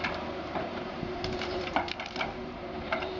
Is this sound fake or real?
fake